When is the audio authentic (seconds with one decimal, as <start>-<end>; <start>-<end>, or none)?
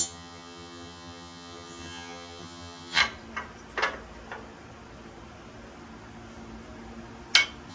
3.0-7.7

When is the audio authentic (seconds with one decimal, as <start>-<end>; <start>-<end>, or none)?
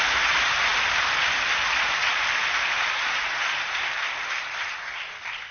0.0-5.5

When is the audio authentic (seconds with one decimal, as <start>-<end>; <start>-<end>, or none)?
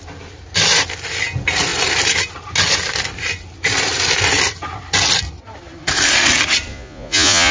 0.0-6.7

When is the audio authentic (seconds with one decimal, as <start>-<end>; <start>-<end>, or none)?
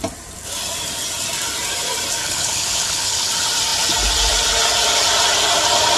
0.0-2.2; 3.3-6.0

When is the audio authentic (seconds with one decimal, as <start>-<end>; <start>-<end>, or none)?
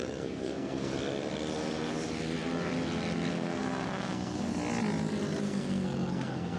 0.9-3.3; 4.5-5.4